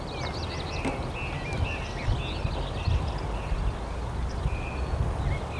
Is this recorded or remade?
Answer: recorded